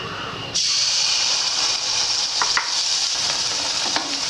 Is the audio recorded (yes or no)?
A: no